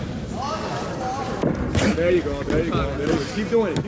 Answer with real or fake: real